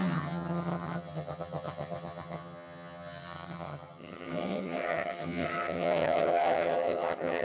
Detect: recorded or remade remade